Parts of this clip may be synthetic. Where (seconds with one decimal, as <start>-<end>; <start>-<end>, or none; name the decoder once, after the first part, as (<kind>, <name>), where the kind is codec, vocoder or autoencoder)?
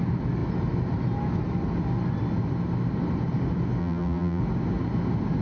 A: 3.8-4.4 (vocoder, BigVGAN v2)